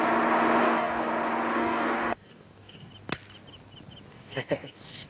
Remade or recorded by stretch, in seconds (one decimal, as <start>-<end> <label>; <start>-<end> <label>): 0.0-0.6 recorded; 0.6-1.1 remade; 1.1-1.5 recorded; 1.5-2.9 remade; 2.9-4.1 recorded; 4.1-5.1 remade